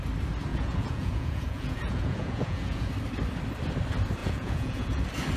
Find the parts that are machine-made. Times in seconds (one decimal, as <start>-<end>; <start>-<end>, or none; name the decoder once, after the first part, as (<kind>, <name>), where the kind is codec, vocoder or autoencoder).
0.5-2.9 (vocoder, Vocos); 4.2-5.0

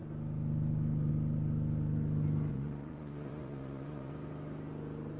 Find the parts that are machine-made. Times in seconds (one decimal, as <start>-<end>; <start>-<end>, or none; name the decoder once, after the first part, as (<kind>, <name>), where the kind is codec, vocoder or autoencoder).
2.5-4.1 (vocoder, Vocos)